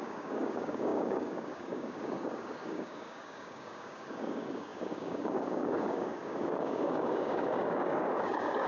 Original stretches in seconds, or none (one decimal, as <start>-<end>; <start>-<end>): none